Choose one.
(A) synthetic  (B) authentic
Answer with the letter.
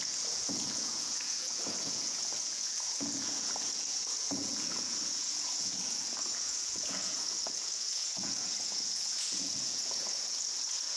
A